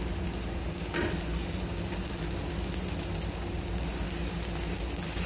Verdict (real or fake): real